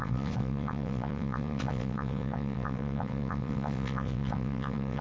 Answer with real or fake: fake